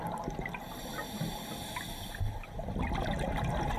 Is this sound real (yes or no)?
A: yes